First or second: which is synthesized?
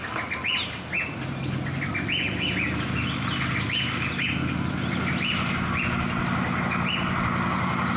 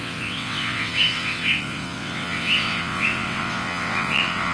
second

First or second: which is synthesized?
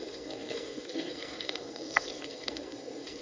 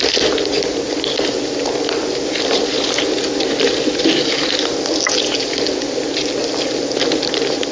first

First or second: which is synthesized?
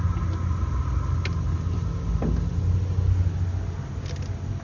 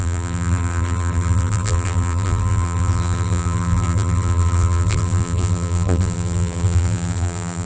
second